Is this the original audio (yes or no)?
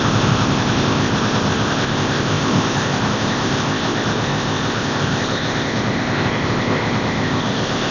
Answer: no